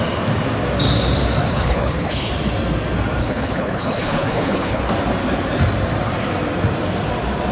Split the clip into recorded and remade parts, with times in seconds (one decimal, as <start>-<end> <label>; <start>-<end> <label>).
0.0-1.4 recorded; 1.4-2.3 remade; 2.3-3.2 recorded; 3.2-4.8 remade; 4.8-7.5 recorded